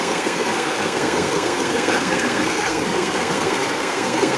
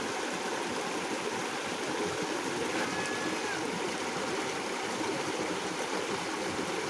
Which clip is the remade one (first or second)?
first